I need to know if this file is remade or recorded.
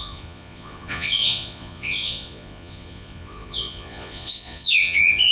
remade